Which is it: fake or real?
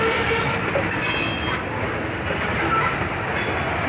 real